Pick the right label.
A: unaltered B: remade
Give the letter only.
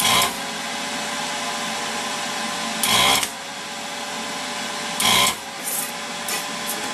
A